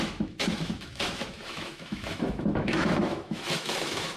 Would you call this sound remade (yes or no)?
yes